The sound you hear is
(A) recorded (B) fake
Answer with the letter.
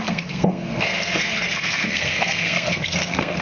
B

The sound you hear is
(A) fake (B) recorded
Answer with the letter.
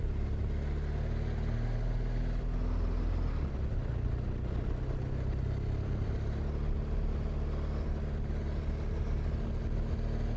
B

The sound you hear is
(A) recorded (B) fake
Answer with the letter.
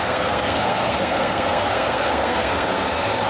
B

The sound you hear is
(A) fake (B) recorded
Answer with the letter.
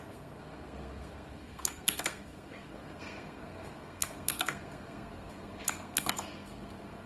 A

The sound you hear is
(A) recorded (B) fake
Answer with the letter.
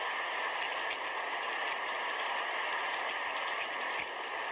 A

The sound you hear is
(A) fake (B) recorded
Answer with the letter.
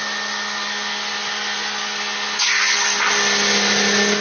B